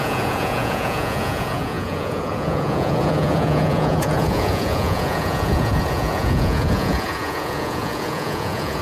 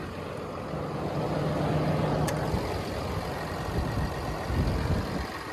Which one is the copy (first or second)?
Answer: first